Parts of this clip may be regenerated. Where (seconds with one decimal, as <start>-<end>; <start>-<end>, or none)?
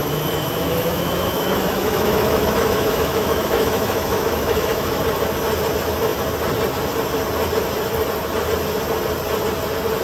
0.0-5.0